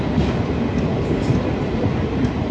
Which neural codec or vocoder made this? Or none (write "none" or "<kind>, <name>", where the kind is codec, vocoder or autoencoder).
none